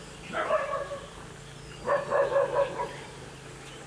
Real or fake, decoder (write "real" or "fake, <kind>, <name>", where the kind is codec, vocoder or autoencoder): real